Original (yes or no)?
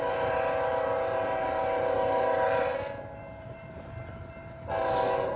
no